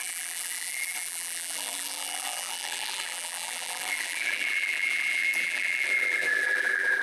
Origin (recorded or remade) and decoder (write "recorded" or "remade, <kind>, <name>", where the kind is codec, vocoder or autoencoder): remade, vocoder, BigVGAN v2